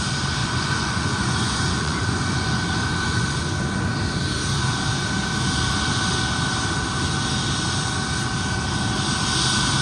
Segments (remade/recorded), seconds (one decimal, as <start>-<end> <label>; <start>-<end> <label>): 0.0-0.4 recorded; 0.4-3.4 remade; 3.4-9.8 recorded

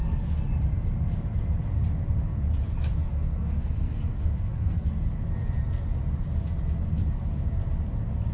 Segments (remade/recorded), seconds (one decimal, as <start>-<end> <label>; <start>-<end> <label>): 0.0-3.0 recorded; 3.0-4.9 remade; 4.9-8.3 recorded

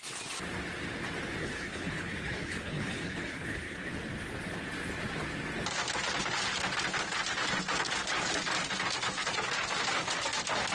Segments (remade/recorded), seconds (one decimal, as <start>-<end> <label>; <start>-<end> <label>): 0.0-1.4 recorded; 1.4-3.9 remade; 3.9-10.7 recorded

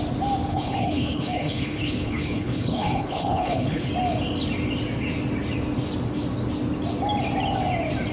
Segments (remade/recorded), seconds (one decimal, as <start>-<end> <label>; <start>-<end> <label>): 0.0-0.5 recorded; 0.5-3.9 remade; 3.9-8.1 recorded